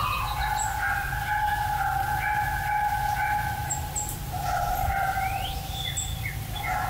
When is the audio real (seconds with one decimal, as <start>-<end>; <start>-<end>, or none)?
0.0-3.6; 5.8-6.9